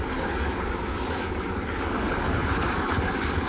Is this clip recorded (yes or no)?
no